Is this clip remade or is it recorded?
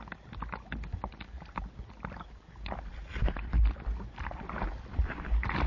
recorded